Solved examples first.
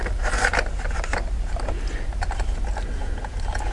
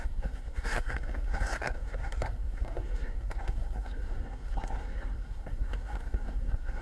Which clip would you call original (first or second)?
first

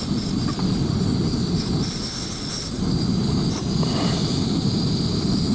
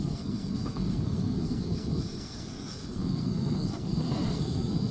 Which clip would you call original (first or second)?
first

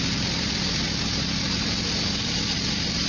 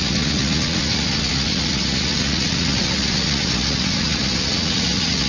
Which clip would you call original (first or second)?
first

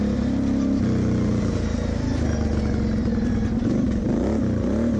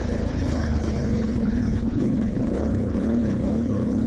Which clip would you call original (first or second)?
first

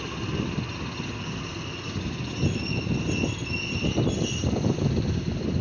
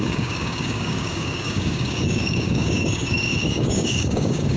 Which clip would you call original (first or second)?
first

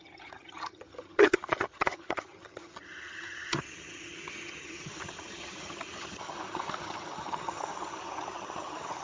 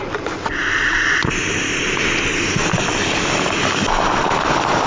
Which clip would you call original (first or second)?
second